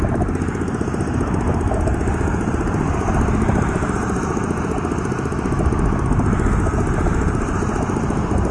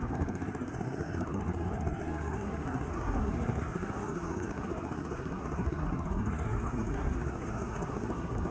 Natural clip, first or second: first